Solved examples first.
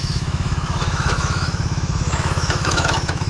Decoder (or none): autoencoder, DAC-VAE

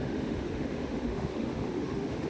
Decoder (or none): autoencoder, DAC-VAE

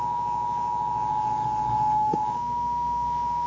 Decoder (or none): autoencoder, DAC-VAE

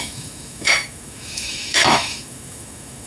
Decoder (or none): autoencoder, DAC-VAE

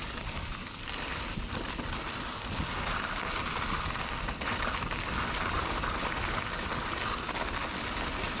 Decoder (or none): none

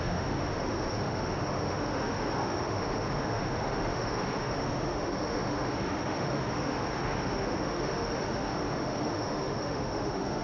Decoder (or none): autoencoder, DAC-VAE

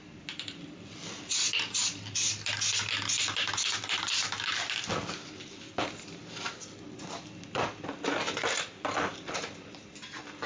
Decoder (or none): none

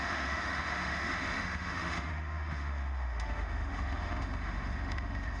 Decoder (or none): autoencoder, DAC-VAE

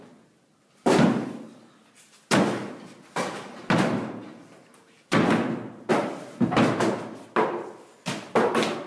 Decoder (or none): none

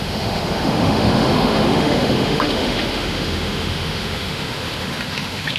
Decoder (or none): autoencoder, DAC-VAE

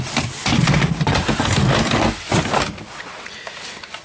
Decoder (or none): none